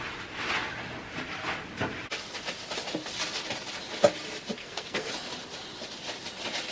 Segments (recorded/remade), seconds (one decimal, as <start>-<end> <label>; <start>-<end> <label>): 0.0-4.6 recorded; 4.6-5.1 remade; 5.1-6.7 recorded